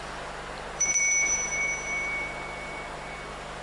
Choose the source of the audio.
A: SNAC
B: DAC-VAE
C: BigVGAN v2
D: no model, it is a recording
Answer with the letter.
C